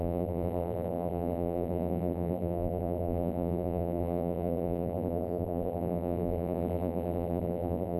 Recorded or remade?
remade